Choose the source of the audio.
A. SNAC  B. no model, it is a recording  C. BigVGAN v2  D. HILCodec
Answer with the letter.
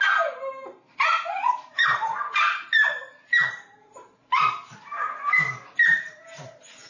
C